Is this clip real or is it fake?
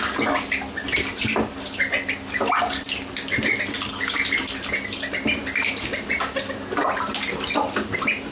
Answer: real